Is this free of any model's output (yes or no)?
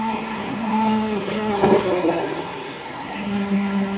no